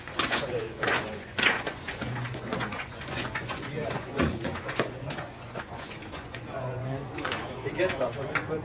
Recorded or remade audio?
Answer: remade